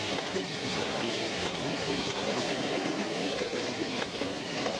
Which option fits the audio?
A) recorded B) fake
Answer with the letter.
B